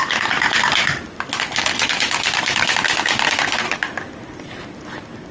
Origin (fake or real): real